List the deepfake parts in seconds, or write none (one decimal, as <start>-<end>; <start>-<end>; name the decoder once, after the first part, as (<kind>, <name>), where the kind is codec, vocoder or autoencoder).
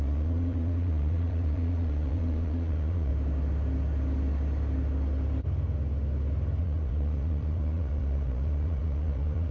0.0-3.1 (vocoder, Vocos); 6.6-9.5